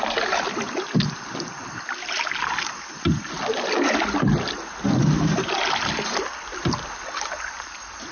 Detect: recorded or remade recorded